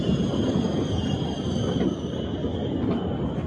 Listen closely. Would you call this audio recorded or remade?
recorded